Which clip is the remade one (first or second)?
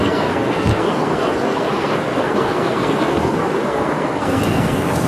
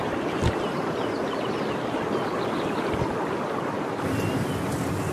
first